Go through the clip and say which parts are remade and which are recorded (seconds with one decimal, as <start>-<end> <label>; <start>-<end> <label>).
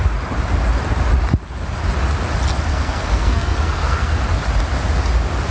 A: 0.0-2.7 recorded; 2.7-4.2 remade; 4.2-5.5 recorded